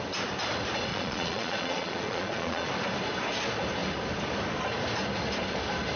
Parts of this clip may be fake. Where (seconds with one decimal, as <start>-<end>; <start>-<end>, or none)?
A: 0.9-2.7

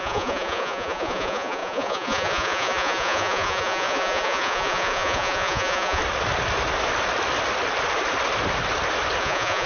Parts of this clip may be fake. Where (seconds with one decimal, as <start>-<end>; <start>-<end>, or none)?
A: 0.0-6.0; 9.2-9.7

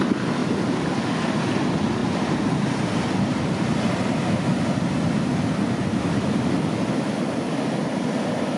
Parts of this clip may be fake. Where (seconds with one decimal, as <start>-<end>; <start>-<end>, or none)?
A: none

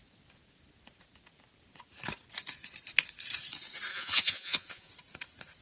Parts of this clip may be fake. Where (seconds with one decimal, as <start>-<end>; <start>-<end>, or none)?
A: 3.9-4.9

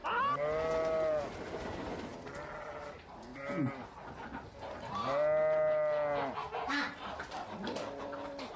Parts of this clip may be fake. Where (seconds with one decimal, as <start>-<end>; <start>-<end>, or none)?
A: none

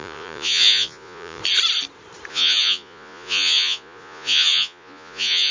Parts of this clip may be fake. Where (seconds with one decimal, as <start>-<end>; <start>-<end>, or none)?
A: 0.0-1.4; 2.3-5.5

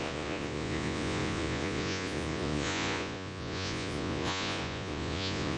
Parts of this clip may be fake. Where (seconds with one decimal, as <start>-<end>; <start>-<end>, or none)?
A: 0.0-5.6

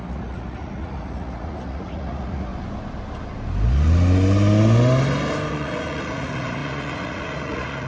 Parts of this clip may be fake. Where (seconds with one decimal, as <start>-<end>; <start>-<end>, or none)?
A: 0.0-2.5; 5.5-7.9